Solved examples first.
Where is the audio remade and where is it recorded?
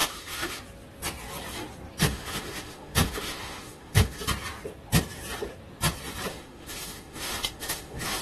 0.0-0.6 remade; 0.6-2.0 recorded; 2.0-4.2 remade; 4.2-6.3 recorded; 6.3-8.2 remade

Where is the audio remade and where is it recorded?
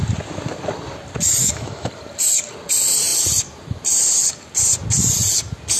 0.0-1.4 recorded; 1.4-1.9 remade; 1.9-5.8 recorded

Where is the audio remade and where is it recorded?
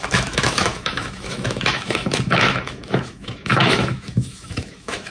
0.0-5.1 remade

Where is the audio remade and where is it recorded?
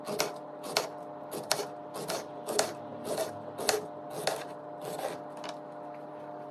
0.0-6.5 recorded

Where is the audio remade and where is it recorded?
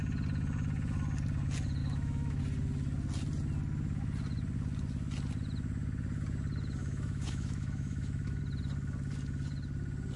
0.0-1.8 recorded; 1.8-2.4 remade; 2.4-6.8 recorded; 6.8-8.4 remade; 8.4-10.2 recorded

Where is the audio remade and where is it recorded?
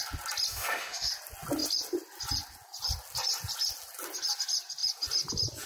0.0-0.5 recorded; 0.5-1.1 remade; 1.1-5.7 recorded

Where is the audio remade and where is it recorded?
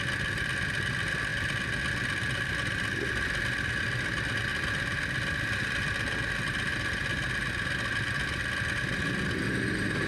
0.0-10.1 recorded